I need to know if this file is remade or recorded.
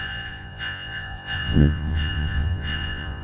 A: remade